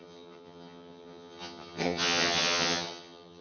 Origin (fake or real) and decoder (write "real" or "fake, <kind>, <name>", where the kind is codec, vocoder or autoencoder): fake, vocoder, HiFi-GAN